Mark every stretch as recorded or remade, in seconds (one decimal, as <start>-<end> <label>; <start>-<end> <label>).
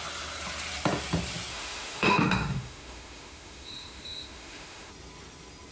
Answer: 0.0-1.5 recorded; 1.5-4.9 remade; 4.9-5.7 recorded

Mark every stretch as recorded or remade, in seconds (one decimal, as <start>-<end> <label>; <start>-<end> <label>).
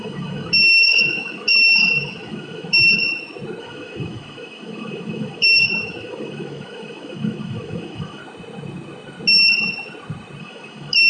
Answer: 0.0-3.0 remade; 3.0-3.6 recorded; 3.6-8.2 remade; 8.2-10.4 recorded; 10.4-11.1 remade